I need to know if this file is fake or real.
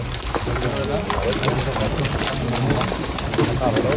real